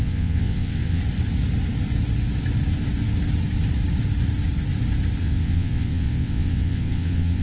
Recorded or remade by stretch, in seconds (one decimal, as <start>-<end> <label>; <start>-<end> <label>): 0.0-1.0 remade; 1.0-5.2 recorded; 5.2-7.4 remade